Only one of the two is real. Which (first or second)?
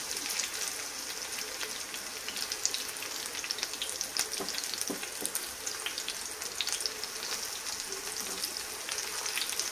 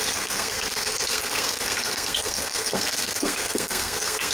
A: first